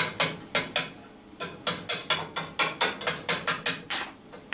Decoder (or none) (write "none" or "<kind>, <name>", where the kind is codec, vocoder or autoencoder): none